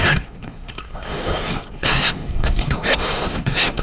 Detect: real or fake fake